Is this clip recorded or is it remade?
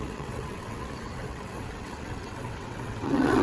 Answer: remade